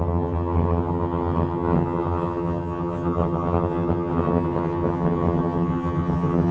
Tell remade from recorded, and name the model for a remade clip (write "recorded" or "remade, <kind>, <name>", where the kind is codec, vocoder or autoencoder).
remade, vocoder, HiFi-GAN